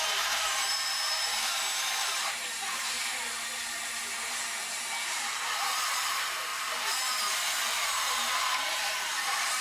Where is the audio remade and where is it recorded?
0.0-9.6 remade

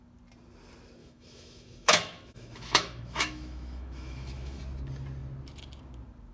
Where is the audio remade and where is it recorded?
0.0-1.0 recorded; 1.0-4.6 remade; 4.6-6.3 recorded

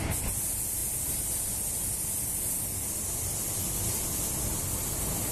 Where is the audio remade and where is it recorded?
0.0-5.3 recorded

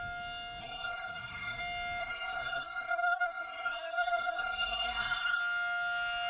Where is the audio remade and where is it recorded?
0.0-0.6 recorded; 0.6-1.6 remade; 1.6-2.0 recorded; 2.0-5.4 remade; 5.4-6.3 recorded